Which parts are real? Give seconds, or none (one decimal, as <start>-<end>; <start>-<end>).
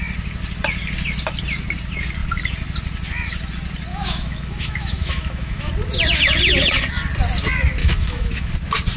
0.0-3.9; 5.7-7.8; 8.5-9.0